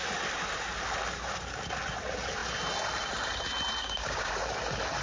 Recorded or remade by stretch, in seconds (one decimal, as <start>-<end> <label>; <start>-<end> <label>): 0.0-3.8 recorded; 3.8-4.3 remade; 4.3-5.0 recorded